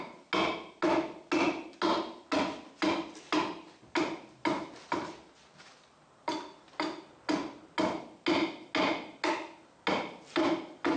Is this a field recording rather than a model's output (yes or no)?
yes